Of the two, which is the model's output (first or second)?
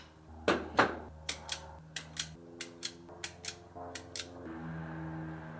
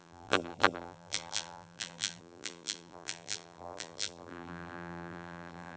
second